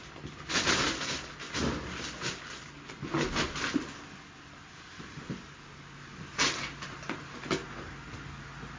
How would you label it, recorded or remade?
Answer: recorded